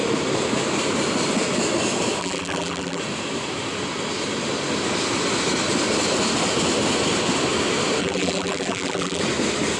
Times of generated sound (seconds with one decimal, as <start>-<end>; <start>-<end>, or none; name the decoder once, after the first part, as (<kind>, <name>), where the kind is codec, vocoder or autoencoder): 2.2-3.0 (vocoder, BigVGAN v2); 8.0-9.2